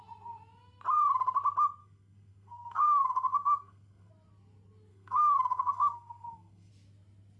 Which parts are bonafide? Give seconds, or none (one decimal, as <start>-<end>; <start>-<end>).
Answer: 0.0-1.8; 4.1-4.9; 6.7-7.4